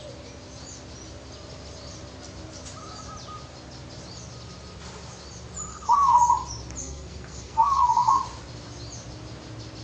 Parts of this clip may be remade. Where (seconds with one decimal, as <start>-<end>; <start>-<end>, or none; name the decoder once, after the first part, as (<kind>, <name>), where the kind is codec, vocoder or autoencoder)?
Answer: 5.7-6.3 (codec, SNAC); 6.8-8.2